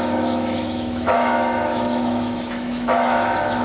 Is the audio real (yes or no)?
no